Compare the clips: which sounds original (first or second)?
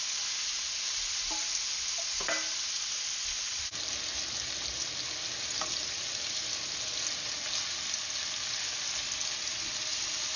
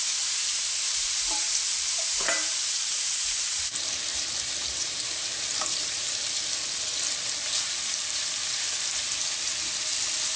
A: first